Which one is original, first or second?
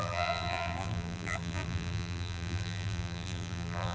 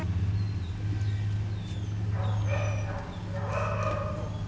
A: second